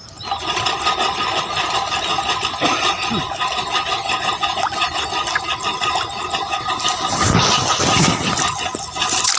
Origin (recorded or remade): recorded